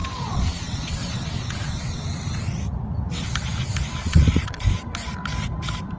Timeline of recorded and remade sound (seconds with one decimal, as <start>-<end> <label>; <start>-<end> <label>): 0.0-2.4 remade; 2.4-4.0 recorded; 4.0-4.6 remade; 4.6-6.0 recorded